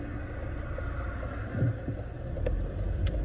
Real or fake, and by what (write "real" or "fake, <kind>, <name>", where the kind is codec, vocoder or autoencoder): real